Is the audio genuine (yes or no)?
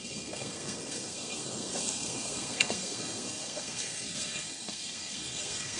no